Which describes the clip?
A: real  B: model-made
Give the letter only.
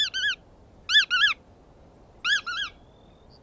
A